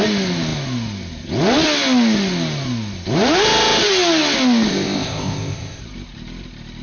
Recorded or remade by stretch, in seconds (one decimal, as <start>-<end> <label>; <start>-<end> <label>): 0.0-4.7 recorded; 4.7-5.8 remade; 5.8-6.8 recorded